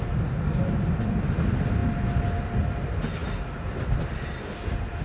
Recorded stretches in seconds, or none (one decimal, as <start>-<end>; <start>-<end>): 0.0-5.0